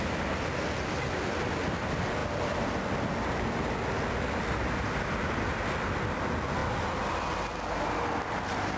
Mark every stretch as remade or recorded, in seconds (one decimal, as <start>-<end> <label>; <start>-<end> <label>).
0.0-8.8 recorded